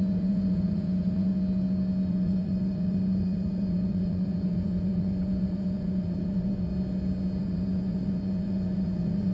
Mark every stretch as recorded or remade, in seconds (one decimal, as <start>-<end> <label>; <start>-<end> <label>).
0.0-1.3 remade; 1.3-2.1 recorded; 2.1-6.7 remade; 6.7-7.4 recorded; 7.4-9.3 remade